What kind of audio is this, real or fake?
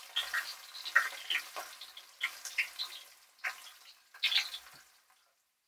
real